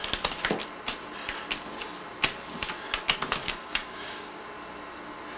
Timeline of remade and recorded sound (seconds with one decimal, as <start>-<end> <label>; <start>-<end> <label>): 0.0-3.4 recorded; 3.4-4.4 remade; 4.4-5.4 recorded